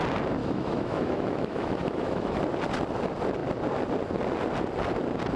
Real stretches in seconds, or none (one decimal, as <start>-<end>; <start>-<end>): 0.0-0.4; 2.4-5.4